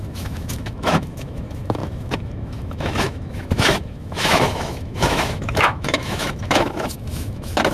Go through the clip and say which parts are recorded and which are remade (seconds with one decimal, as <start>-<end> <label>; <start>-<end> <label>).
0.0-7.7 remade